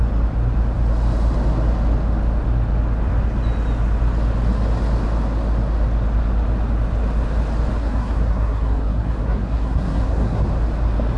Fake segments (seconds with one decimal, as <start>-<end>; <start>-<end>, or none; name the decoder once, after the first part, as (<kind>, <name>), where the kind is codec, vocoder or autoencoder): 7.8-10.4 (codec, SNAC)